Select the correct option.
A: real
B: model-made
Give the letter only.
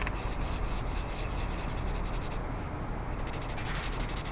A